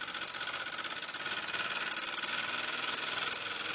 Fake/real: real